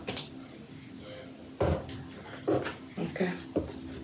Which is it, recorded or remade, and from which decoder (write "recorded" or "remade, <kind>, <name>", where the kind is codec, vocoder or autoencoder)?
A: recorded